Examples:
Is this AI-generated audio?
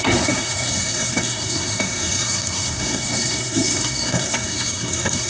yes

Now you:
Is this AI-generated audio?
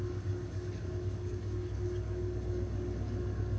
yes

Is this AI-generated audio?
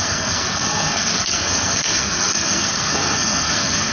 yes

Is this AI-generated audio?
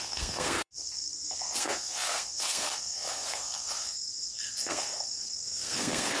yes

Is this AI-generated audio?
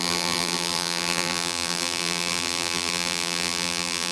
yes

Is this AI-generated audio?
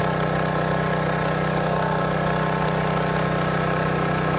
no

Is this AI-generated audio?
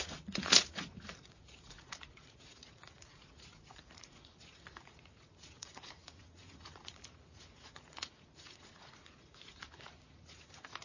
yes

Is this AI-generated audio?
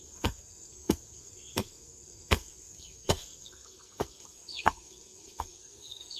yes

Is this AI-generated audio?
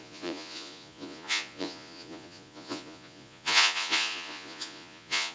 yes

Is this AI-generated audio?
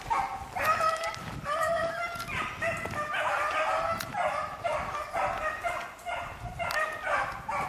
no